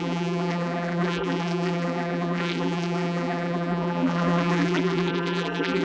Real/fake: fake